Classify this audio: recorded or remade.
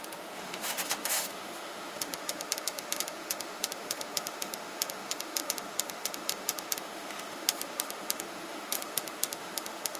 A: remade